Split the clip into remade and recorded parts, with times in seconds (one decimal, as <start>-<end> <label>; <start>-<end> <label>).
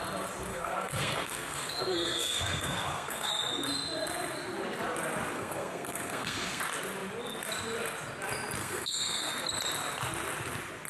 0.0-0.5 recorded; 0.5-3.3 remade; 3.3-5.3 recorded; 5.3-6.6 remade; 6.6-8.6 recorded; 8.6-9.3 remade; 9.3-10.9 recorded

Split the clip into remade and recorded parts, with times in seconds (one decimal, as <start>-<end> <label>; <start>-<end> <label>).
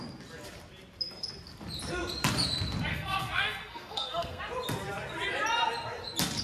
0.0-2.9 recorded; 2.9-4.4 remade; 4.4-6.4 recorded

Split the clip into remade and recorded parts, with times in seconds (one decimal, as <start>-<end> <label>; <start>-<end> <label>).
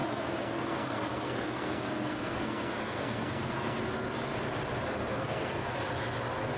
0.0-3.8 remade; 3.8-5.1 recorded; 5.1-5.7 remade; 5.7-6.6 recorded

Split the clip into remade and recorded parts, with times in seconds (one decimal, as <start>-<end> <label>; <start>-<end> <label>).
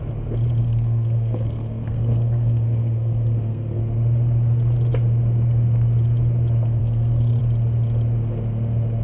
0.0-0.6 recorded; 0.6-3.8 remade; 3.8-6.8 recorded; 6.8-7.4 remade; 7.4-9.0 recorded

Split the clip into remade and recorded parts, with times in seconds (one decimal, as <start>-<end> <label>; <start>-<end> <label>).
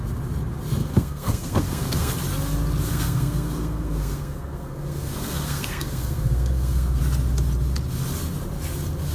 0.0-0.8 recorded; 0.8-2.1 remade; 2.1-2.9 recorded; 2.9-7.0 remade; 7.0-9.1 recorded